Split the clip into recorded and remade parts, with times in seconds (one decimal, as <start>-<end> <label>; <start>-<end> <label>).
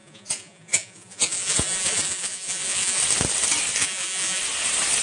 0.0-3.0 remade; 3.0-3.8 recorded; 3.8-4.4 remade; 4.4-5.0 recorded